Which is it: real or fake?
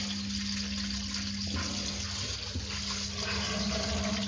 real